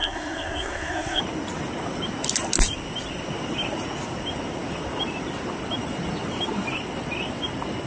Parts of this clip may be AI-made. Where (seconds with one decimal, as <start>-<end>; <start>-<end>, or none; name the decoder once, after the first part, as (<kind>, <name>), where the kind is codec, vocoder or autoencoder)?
0.0-1.2 (codec, SNAC)